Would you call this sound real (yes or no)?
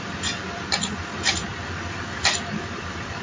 yes